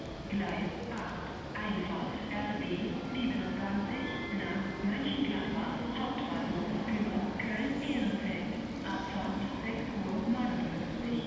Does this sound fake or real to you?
real